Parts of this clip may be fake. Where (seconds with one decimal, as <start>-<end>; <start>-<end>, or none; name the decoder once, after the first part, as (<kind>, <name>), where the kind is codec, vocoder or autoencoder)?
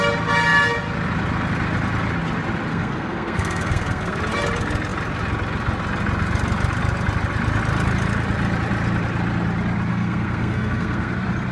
2.7-4.2 (codec, SNAC); 9.9-11.1